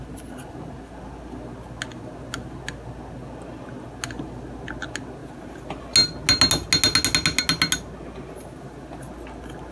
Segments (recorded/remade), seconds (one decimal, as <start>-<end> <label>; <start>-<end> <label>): 0.0-9.7 recorded